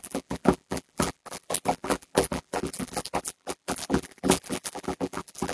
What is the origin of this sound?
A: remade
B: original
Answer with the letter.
A